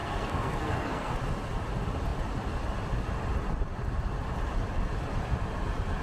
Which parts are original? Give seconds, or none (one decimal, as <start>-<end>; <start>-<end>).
1.2-6.0

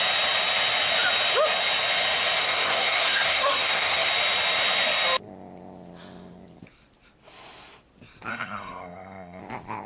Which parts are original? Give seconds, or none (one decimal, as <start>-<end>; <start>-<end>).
0.0-2.4; 4.1-8.3; 9.4-9.9

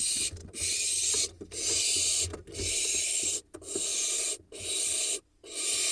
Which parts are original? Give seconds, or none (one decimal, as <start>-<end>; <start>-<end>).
0.0-5.9

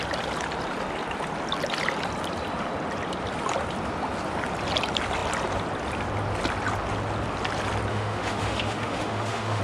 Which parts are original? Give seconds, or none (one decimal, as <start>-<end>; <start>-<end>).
0.0-7.9

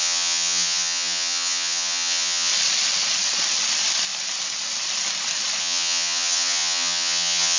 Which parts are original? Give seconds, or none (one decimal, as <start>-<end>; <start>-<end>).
2.5-5.6